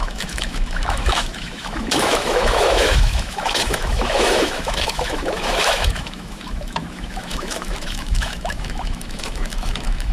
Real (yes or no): no